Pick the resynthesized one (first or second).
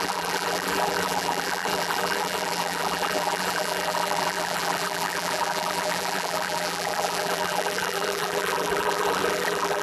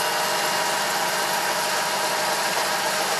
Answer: first